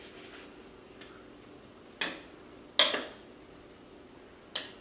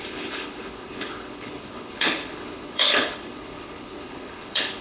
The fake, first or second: second